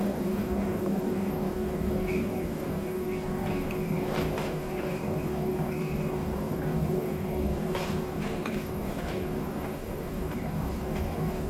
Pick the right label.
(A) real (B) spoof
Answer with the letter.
B